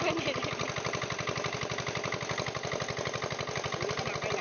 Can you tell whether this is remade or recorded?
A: recorded